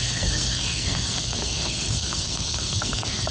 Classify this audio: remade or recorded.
remade